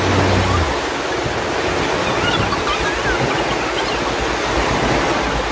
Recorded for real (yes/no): yes